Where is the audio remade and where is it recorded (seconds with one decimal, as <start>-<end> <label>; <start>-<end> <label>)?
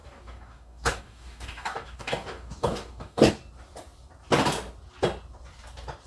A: 0.0-3.3 remade; 3.3-6.1 recorded